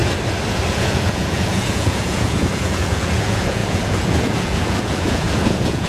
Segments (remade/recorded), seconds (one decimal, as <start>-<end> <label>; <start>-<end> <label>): 0.0-0.7 recorded; 0.7-5.9 remade

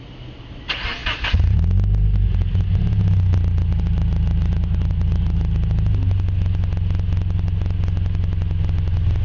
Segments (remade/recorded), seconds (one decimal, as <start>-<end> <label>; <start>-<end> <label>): 0.0-9.2 recorded

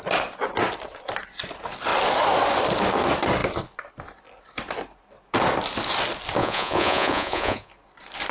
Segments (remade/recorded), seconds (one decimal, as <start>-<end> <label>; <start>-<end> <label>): 0.0-6.4 recorded; 6.4-7.7 remade; 7.7-8.3 recorded

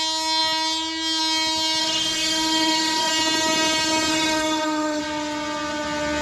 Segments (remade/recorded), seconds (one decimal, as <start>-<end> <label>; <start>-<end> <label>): 0.0-1.8 recorded; 1.8-3.1 remade; 3.1-4.1 recorded; 4.1-5.0 remade; 5.0-6.2 recorded